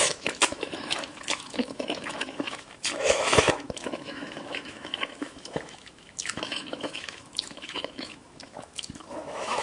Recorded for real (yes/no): no